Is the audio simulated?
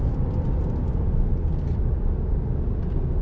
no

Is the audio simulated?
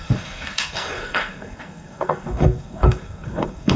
yes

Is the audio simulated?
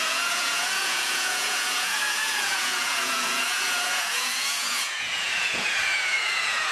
yes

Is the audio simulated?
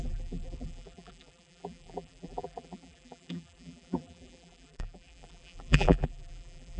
yes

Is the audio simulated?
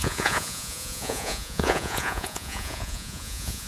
yes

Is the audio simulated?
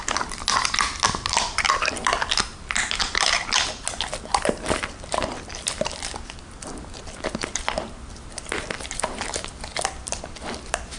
no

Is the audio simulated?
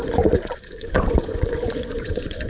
yes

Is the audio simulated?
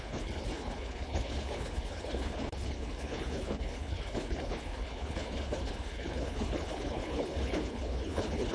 yes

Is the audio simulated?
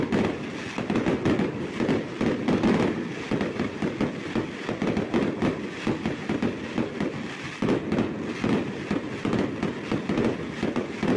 no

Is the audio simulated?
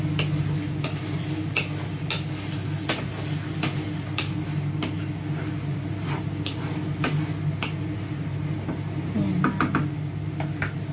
no